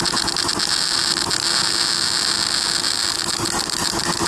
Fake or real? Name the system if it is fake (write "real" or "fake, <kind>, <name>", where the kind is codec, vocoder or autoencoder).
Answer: real